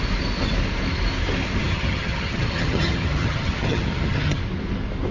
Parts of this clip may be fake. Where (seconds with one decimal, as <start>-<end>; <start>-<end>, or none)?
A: 1.6-4.4